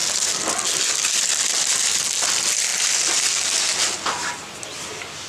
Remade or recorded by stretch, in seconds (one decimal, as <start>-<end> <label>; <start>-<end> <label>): 0.0-5.3 recorded